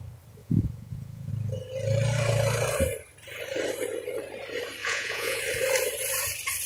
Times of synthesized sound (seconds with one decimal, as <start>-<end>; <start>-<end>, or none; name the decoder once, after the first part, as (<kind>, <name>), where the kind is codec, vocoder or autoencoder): 0.4-1.3 (vocoder, Vocos); 4.8-5.4